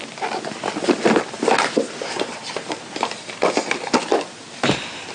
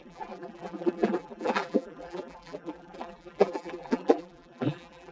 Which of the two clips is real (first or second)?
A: first